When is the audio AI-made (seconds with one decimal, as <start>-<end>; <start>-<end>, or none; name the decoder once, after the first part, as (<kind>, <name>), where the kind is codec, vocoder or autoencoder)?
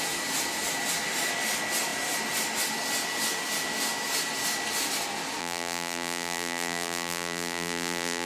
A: 5.4-8.3 (vocoder, BigVGAN v2)